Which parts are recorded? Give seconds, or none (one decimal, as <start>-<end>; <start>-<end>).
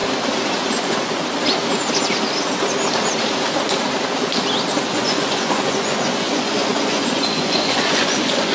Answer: 0.0-0.7; 1.2-4.9